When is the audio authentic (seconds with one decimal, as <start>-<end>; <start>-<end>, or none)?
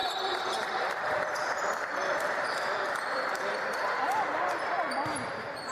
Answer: none